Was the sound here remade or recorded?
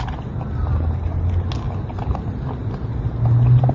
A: recorded